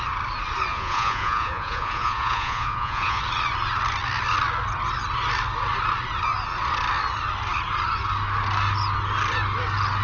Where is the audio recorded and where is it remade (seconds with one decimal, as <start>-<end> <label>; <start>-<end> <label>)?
0.0-0.7 recorded; 0.7-3.2 remade; 3.2-10.0 recorded